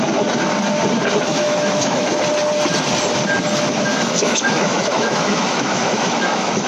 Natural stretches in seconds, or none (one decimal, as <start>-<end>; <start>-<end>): 0.0-1.3; 2.1-3.9

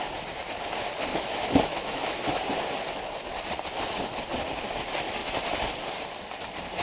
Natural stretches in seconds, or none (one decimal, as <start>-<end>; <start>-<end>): 0.0-1.1; 2.2-6.8

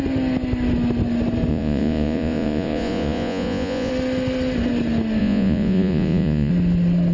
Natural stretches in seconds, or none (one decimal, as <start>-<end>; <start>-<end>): 0.0-1.5; 3.9-5.2; 6.5-7.1

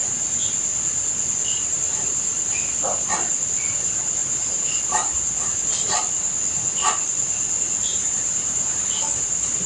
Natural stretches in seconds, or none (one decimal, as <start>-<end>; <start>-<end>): 0.0-1.7; 3.1-4.2; 4.8-7.9; 9.0-9.7

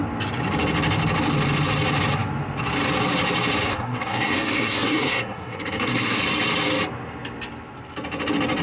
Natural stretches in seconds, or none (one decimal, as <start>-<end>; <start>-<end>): 0.0-3.7; 6.2-8.6

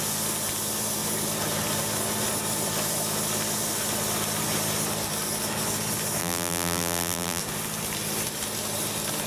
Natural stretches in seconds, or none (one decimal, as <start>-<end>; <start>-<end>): 0.0-6.2; 7.4-9.3

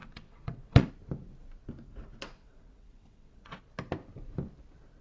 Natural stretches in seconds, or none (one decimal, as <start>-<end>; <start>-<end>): 0.9-1.9; 3.6-5.0